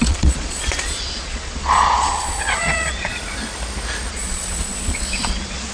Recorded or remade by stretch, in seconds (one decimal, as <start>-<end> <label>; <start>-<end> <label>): 0.0-3.1 remade; 3.1-4.1 recorded; 4.1-5.7 remade